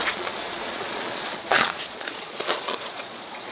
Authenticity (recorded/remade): remade